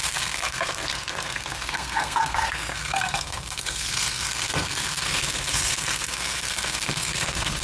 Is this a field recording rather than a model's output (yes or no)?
no